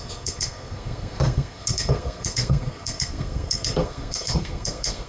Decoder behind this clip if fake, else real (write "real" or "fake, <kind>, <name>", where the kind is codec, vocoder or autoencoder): fake, codec, SNAC